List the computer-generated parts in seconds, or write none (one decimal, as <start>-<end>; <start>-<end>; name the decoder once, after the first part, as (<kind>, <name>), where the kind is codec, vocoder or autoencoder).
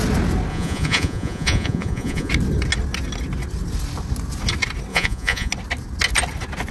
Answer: 0.5-2.3 (vocoder, Vocos); 4.9-5.5